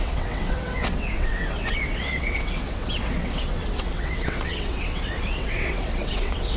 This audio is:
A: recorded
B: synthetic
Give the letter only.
B